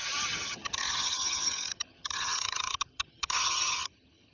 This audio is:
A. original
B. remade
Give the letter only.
B